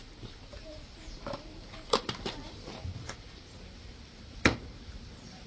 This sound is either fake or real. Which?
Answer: fake